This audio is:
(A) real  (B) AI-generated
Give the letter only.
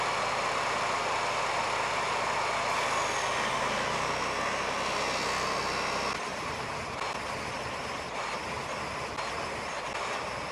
A